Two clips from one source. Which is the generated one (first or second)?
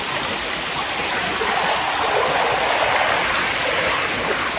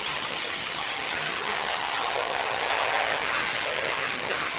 second